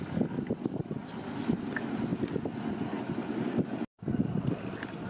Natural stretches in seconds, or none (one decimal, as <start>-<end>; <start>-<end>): 0.0-5.1